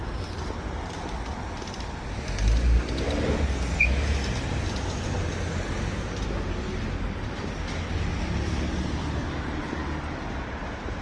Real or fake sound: real